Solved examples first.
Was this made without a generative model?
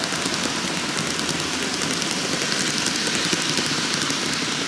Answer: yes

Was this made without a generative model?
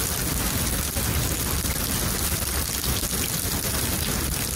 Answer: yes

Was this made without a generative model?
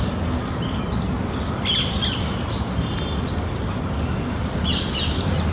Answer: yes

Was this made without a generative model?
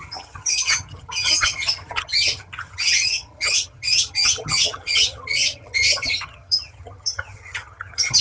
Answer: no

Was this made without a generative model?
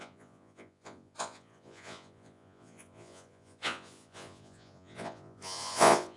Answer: no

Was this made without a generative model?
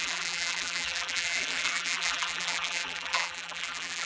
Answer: no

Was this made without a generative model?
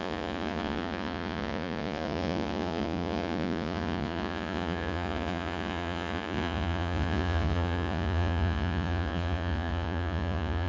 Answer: no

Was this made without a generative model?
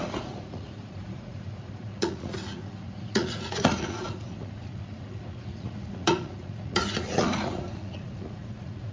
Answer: no